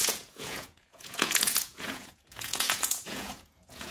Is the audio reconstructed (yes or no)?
yes